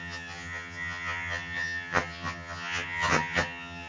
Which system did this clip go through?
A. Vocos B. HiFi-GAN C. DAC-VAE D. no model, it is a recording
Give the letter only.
B